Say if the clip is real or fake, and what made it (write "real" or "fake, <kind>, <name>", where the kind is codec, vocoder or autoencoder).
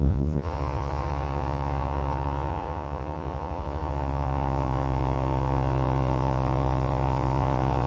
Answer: fake, vocoder, Vocos